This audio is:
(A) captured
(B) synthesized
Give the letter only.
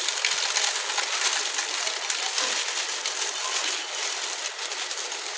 A